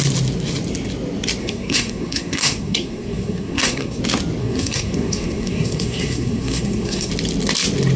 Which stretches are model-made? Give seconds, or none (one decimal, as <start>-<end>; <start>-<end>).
1.4-4.0; 4.4-7.1